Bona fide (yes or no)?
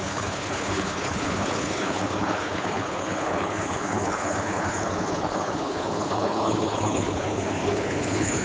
no